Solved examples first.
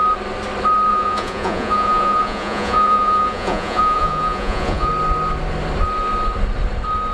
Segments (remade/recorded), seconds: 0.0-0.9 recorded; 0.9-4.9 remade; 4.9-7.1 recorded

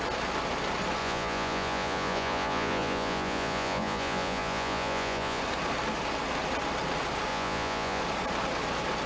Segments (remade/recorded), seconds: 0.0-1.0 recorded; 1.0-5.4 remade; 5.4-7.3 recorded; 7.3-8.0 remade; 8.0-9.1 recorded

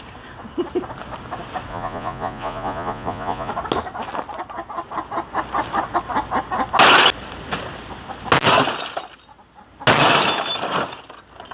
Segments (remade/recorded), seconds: 0.0-1.7 recorded; 1.7-3.5 remade; 3.5-11.5 recorded

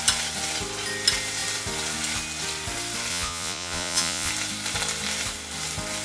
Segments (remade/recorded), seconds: 0.0-3.1 recorded; 3.1-4.3 remade; 4.3-6.0 recorded

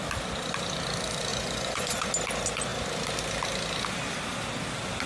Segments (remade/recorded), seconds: 0.0-1.3 recorded; 1.3-2.1 remade; 2.1-5.1 recorded

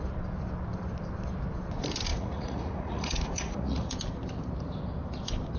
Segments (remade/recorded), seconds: 0.0-2.1 recorded; 2.1-3.9 remade; 3.9-5.6 recorded

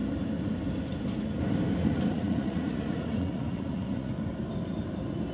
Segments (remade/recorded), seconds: 0.0-1.8 recorded; 1.8-4.1 remade; 4.1-5.3 recorded